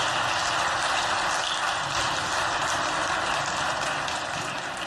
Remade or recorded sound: recorded